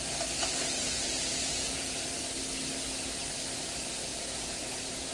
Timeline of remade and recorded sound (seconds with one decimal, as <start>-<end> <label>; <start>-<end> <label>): 0.0-0.4 recorded; 0.4-2.0 remade; 2.0-4.1 recorded; 4.1-5.1 remade